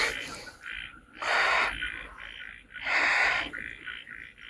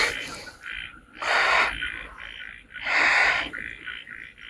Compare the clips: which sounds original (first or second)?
first